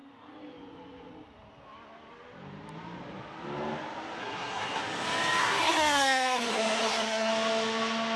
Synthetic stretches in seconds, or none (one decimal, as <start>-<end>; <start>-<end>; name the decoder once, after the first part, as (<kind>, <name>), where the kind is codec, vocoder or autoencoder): 4.2-4.8 (codec, SNAC); 5.4-7.3